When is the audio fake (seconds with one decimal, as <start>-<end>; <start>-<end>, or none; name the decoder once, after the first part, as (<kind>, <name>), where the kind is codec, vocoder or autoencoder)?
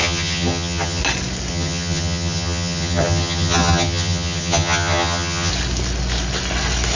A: 0.0-1.0 (vocoder, HiFi-GAN); 1.5-5.5